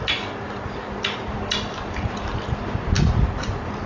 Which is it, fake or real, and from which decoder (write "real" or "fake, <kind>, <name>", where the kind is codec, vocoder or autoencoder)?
real